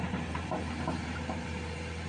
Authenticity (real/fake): fake